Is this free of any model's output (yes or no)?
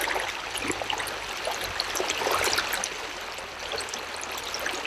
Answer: yes